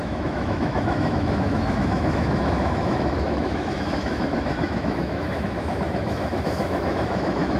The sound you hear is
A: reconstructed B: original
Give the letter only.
A